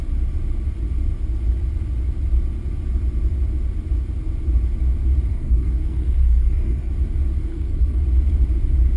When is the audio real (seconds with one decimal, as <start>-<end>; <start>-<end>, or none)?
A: 0.0-5.3; 6.9-7.5; 8.0-9.0